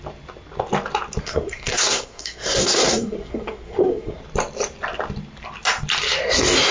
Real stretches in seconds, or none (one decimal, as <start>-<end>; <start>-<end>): 0.0-1.2; 4.2-6.7

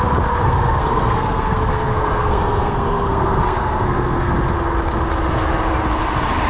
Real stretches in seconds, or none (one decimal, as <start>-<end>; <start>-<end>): 0.0-0.4; 4.3-6.5

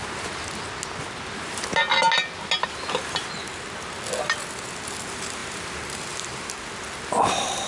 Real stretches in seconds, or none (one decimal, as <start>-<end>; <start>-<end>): 0.0-7.7